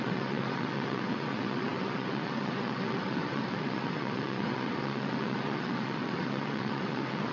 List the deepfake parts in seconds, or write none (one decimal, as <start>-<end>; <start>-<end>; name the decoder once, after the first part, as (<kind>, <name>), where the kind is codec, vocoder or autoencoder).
0.0-7.3 (vocoder, WaveNeXt)